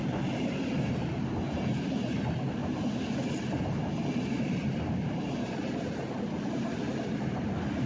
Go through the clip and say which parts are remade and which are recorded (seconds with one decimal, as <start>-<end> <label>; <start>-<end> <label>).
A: 0.0-7.9 recorded